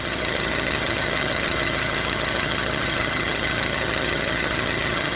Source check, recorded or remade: remade